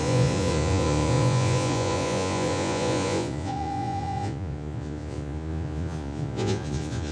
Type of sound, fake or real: fake